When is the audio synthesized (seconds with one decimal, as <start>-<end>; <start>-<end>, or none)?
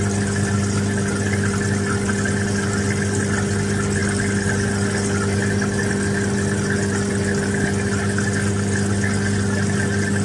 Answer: none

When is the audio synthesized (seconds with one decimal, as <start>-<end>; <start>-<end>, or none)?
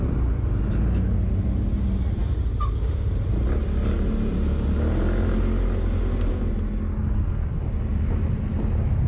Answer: none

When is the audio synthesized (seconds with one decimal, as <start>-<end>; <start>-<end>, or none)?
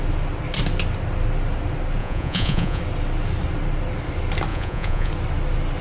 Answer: 2.0-2.8; 4.5-5.1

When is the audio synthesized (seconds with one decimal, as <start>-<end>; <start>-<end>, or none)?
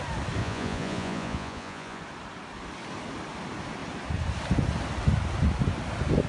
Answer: 0.4-2.0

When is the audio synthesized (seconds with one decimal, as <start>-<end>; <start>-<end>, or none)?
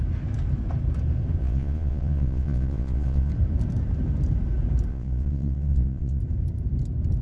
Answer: 1.4-3.3; 4.9-6.2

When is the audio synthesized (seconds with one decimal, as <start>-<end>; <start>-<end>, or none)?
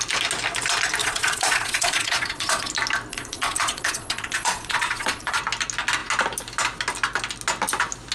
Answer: 1.0-2.7; 3.1-5.4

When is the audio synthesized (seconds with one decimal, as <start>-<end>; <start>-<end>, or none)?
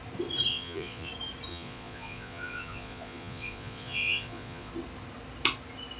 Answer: 0.5-1.1; 1.5-4.7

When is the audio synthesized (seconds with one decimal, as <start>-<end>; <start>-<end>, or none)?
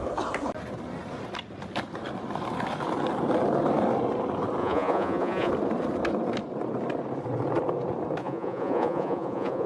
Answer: 4.6-5.5; 8.2-9.7